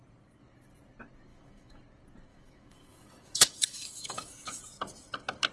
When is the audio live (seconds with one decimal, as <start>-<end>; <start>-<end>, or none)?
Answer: 0.0-1.3; 1.8-2.3; 4.6-5.5